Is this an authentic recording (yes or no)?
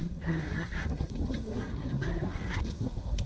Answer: no